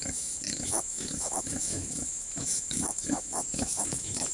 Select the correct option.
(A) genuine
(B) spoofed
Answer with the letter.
B